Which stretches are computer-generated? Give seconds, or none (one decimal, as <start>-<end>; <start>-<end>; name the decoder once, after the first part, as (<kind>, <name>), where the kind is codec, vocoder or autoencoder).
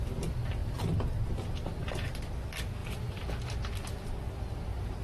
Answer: 2.8-3.3 (vocoder, BigVGAN v2)